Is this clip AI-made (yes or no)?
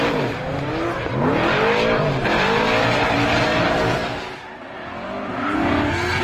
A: no